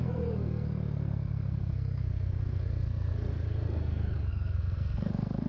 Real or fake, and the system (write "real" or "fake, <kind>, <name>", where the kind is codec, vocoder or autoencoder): fake, codec, SNAC